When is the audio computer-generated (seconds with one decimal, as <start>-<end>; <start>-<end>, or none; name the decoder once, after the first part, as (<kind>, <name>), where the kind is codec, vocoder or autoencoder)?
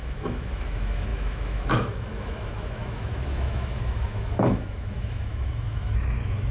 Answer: 0.0-6.5 (autoencoder, DAC-VAE)